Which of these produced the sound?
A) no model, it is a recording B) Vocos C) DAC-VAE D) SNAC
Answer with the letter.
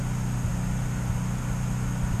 A